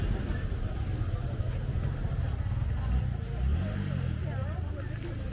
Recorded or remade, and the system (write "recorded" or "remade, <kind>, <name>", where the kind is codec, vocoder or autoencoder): recorded